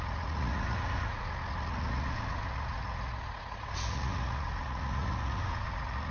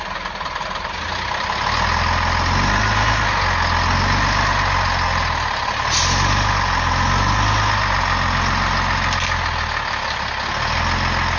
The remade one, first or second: first